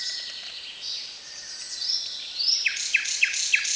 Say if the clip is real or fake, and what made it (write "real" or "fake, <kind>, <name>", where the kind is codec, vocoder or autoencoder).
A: real